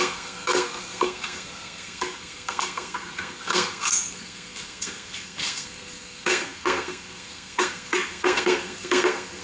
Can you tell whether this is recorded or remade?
remade